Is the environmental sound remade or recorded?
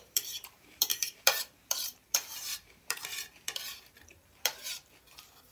remade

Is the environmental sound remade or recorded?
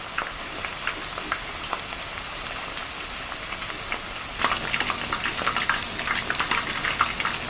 recorded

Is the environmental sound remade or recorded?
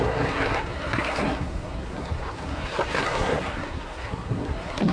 remade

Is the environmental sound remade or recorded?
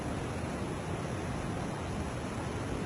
recorded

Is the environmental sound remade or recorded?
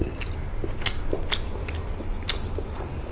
recorded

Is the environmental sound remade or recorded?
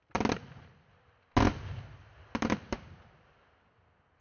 recorded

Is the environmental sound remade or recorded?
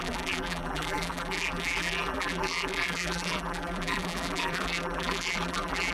remade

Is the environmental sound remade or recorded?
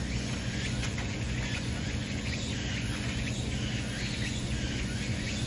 remade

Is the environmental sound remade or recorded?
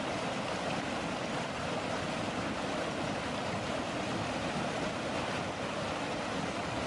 recorded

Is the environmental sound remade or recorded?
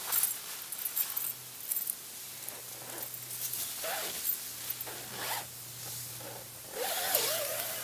recorded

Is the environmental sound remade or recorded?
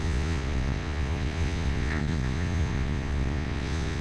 remade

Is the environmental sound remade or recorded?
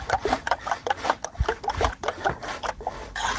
recorded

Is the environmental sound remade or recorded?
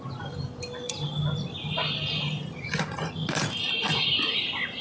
recorded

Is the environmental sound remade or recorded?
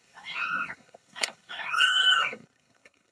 remade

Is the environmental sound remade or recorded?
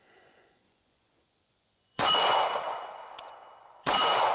remade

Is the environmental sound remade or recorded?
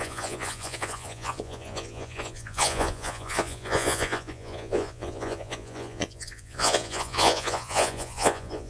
remade